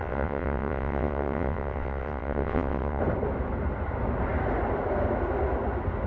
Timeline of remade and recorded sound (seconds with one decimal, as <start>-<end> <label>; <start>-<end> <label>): 0.0-3.0 remade; 3.0-6.1 recorded

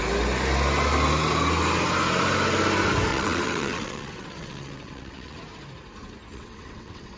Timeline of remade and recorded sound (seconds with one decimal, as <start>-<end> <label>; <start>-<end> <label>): 0.0-3.1 recorded; 3.1-5.4 remade; 5.4-6.3 recorded; 6.3-7.2 remade

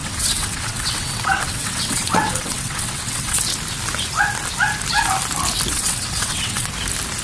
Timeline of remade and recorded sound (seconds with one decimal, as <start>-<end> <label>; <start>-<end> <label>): 0.0-3.4 remade; 3.4-5.7 recorded; 5.7-6.7 remade; 6.7-7.2 recorded

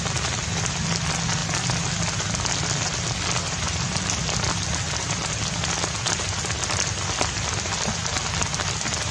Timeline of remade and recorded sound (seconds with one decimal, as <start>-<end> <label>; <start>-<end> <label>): 0.0-9.1 recorded

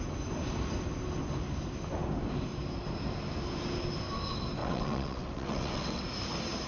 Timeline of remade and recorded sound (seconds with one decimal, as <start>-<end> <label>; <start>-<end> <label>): 0.0-4.6 recorded; 4.6-6.0 remade; 6.0-6.7 recorded

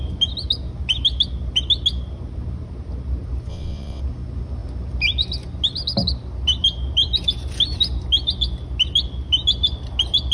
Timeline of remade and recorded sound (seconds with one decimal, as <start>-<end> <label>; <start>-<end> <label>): 0.0-3.5 recorded; 3.5-4.0 remade; 4.0-10.3 recorded

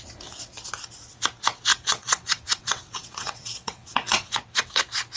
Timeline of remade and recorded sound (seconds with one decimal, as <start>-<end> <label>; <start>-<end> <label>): 0.0-1.7 recorded; 1.7-4.8 remade; 4.8-5.2 recorded